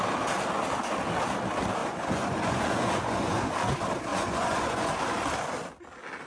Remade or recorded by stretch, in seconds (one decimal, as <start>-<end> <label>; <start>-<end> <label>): 0.0-1.8 recorded; 1.8-3.5 remade; 3.5-4.1 recorded; 4.1-4.9 remade; 4.9-6.3 recorded